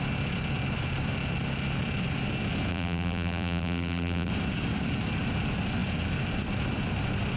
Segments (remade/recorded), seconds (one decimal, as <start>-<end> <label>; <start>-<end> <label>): 0.0-2.7 recorded; 2.7-4.3 remade; 4.3-7.4 recorded